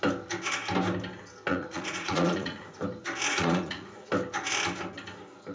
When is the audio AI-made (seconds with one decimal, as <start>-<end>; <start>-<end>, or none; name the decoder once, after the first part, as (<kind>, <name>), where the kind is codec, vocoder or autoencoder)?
1.5-2.8 (vocoder, Vocos); 3.3-4.1